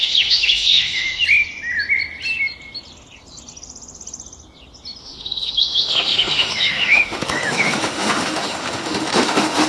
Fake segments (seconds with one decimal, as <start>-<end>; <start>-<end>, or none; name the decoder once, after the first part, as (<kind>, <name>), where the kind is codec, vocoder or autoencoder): 0.0-1.2 (autoencoder, DAC-VAE); 5.0-9.7